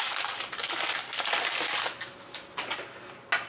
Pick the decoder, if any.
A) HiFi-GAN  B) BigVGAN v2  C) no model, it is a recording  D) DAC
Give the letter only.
C